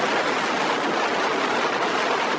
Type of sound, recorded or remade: recorded